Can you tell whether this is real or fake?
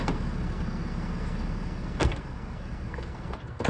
fake